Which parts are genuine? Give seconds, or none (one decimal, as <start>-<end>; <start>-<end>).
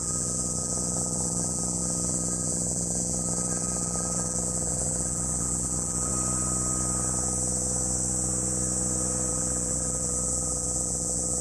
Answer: 6.1-9.3